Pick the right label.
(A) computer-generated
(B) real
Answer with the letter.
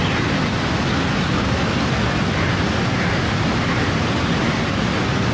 B